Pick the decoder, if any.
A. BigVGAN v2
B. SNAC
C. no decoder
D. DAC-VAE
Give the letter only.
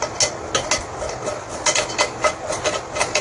C